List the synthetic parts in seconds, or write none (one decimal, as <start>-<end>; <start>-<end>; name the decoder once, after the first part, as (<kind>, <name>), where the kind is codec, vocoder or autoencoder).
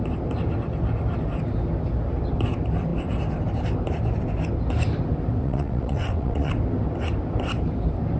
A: 5.4-6.5 (vocoder, WaveNeXt)